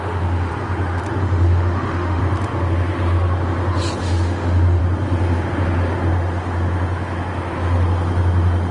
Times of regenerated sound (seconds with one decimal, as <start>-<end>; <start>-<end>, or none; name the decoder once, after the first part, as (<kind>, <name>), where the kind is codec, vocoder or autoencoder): 0.0-0.5 (autoencoder, DAC-VAE); 1.2-2.2; 4.0-4.8